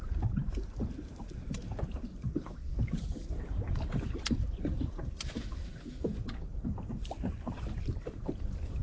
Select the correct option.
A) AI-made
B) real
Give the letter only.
A